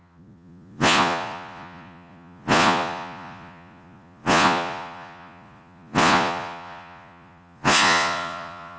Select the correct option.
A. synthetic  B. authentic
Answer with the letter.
A